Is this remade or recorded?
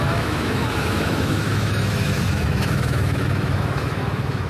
remade